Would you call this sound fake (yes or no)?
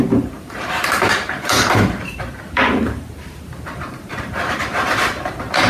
yes